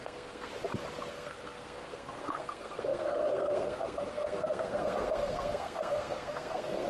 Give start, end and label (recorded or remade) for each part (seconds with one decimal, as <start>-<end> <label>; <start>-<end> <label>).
0.0-0.5 remade; 0.5-1.1 recorded; 1.1-6.9 remade